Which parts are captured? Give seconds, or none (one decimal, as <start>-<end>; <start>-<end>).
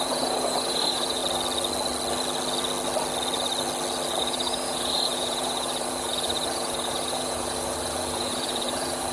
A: 1.2-4.2